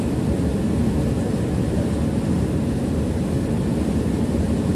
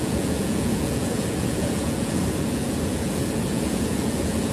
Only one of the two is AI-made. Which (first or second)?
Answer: second